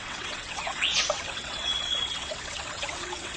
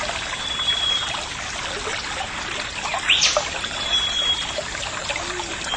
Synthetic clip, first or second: first